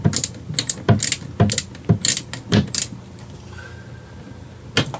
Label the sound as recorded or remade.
recorded